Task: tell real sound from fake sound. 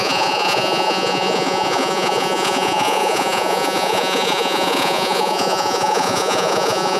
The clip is fake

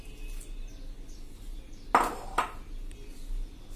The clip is real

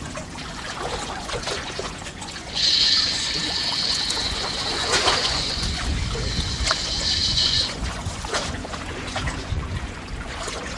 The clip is fake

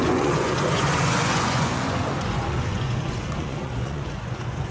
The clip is fake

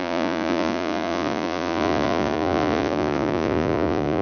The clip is fake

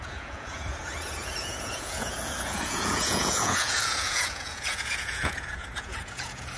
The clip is fake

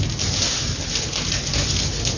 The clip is real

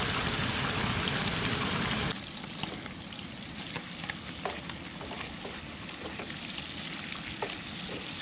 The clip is real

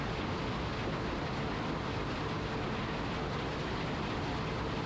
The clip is real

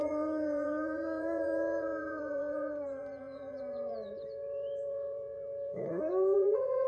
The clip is fake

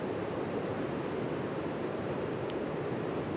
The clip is real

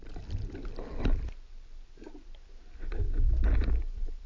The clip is real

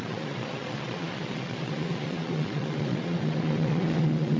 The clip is fake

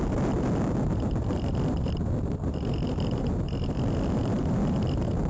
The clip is real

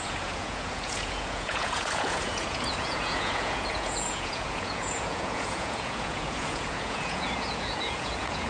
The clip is fake